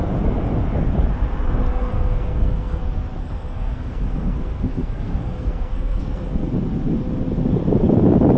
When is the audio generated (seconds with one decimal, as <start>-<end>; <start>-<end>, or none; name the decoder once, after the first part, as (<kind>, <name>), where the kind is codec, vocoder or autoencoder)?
1.7-2.8 (codec, SNAC); 3.2-6.5